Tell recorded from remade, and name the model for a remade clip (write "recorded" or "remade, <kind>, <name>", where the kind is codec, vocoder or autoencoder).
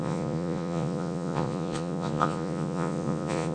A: remade, vocoder, Vocos